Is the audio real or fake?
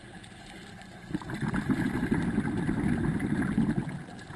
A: real